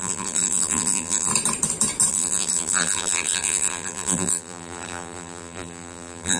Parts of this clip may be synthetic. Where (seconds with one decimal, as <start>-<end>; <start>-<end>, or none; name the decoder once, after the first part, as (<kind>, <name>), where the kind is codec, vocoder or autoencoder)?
0.0-1.3 (vocoder, BigVGAN v2); 2.1-6.4